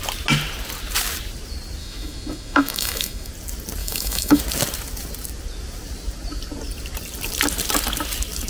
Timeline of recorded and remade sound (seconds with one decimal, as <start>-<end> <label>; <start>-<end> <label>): 0.0-1.8 recorded; 1.8-3.3 remade; 3.3-3.8 recorded; 3.8-4.4 remade; 4.4-8.5 recorded